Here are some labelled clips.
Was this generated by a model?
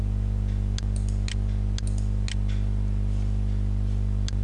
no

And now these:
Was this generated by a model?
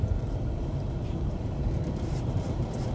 yes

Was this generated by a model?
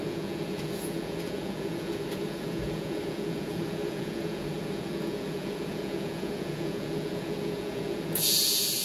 yes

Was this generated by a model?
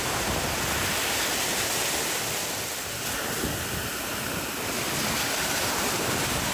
no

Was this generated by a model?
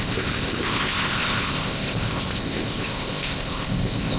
yes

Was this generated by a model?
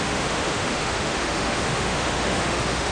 yes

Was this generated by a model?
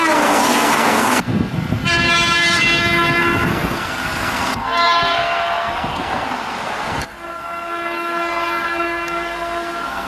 yes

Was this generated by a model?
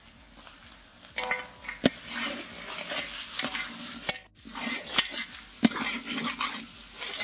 no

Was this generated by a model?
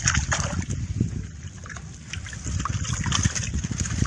no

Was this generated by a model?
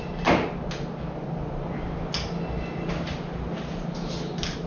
no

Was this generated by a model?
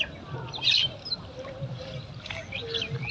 no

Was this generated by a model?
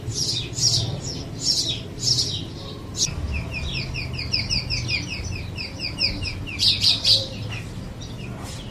no